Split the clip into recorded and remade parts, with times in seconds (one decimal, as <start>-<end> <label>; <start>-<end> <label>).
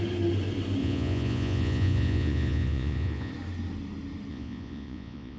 0.0-0.8 recorded; 0.8-3.3 remade; 3.3-4.3 recorded; 4.3-5.4 remade